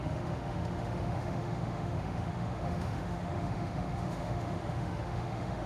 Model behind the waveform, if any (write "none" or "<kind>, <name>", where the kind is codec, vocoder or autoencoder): autoencoder, DAC-VAE